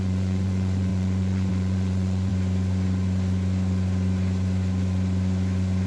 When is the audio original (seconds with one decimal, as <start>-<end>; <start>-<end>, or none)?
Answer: 2.3-5.9